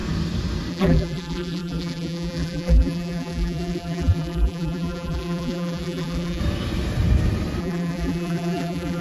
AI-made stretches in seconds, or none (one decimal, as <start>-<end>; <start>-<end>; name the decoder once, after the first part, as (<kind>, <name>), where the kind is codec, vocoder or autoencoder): 0.7-6.4 (vocoder, BigVGAN v2); 7.6-9.0